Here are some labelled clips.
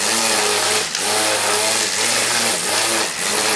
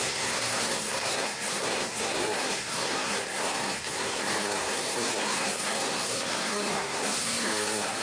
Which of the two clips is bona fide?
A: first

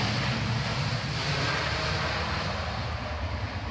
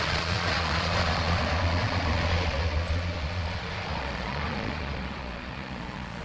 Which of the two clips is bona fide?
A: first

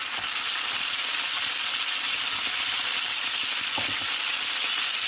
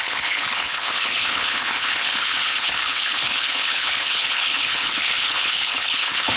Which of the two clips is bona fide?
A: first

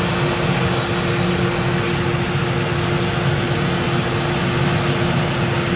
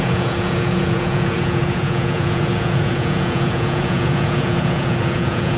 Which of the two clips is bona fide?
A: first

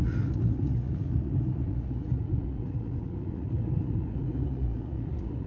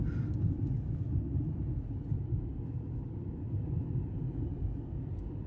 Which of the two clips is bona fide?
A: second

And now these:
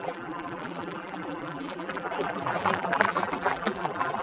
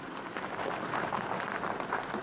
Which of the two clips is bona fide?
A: second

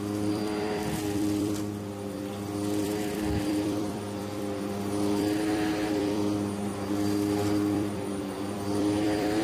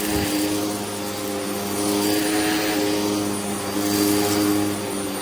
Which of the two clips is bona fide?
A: second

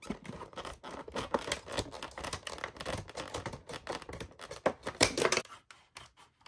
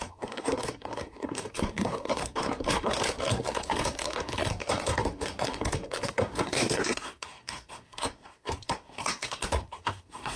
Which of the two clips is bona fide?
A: first